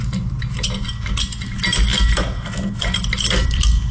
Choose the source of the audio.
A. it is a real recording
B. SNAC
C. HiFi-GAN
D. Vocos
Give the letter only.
A